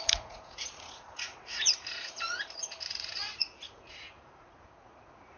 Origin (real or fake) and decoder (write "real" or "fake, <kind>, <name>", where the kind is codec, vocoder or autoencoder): fake, vocoder, Vocos